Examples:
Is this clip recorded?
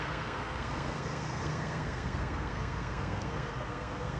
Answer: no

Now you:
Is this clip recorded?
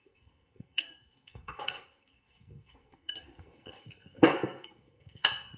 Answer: no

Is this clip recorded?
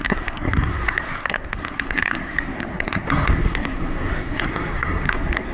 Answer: no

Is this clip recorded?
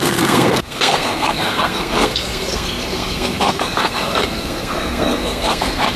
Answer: no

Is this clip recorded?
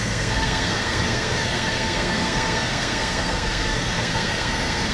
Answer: no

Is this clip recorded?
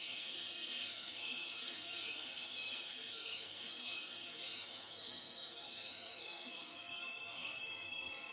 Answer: no